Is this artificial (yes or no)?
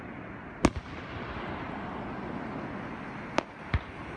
no